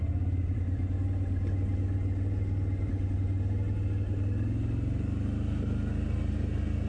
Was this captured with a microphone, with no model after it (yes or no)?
yes